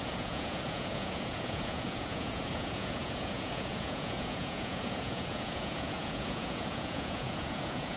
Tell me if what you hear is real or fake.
fake